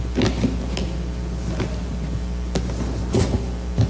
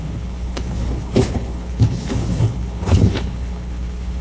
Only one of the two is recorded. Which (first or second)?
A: first